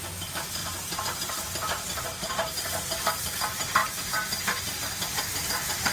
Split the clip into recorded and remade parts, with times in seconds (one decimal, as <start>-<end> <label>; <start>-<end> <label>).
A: 0.0-5.9 recorded